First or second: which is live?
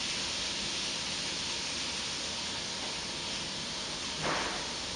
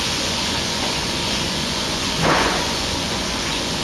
first